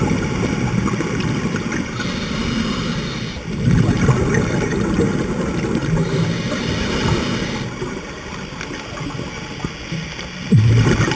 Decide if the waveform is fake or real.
real